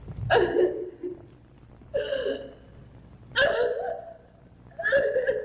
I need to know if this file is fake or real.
real